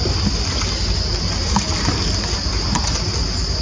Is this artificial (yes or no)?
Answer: no